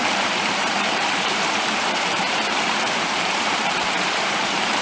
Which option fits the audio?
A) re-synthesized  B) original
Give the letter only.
A